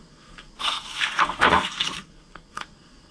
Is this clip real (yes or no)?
no